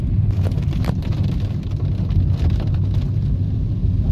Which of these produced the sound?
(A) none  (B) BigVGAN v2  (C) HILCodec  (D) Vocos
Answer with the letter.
A